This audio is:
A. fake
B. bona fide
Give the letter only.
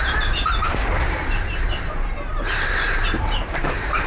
A